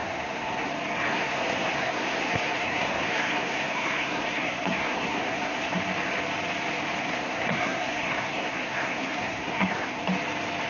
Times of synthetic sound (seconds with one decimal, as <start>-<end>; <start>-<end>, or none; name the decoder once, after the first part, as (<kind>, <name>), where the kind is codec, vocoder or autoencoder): 0.0-0.7 (codec, SNAC); 1.1-5.8; 7.0-10.0